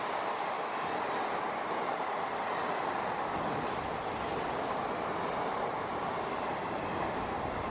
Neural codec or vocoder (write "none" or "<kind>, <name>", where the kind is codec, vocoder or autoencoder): none